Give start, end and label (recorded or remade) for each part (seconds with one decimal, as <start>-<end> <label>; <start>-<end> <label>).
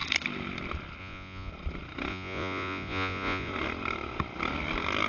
0.0-1.0 recorded; 1.0-1.5 remade; 1.5-2.1 recorded; 2.1-3.5 remade; 3.5-5.1 recorded